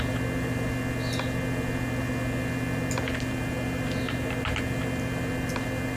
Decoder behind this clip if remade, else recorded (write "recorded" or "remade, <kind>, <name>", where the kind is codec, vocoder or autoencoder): recorded